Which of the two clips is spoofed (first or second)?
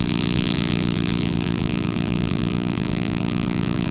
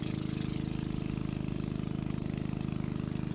first